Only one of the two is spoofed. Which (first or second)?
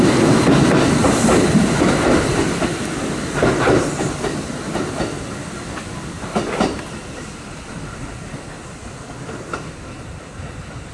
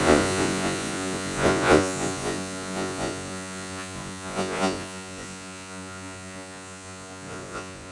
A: second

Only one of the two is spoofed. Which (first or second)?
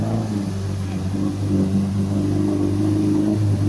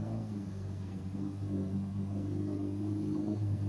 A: second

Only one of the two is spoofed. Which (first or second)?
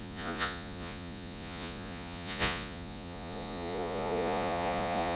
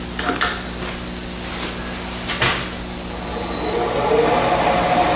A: first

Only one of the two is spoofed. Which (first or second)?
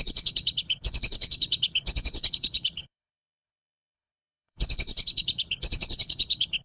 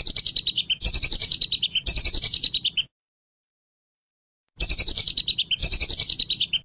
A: first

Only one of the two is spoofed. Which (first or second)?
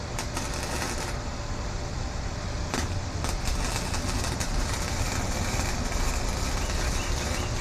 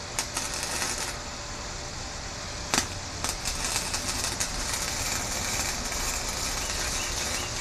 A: first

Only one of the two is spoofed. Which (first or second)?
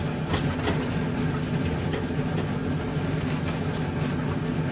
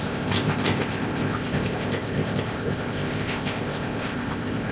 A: second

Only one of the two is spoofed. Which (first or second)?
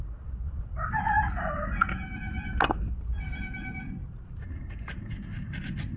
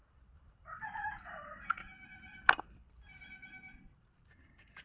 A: second